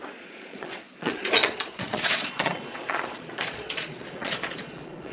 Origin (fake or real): fake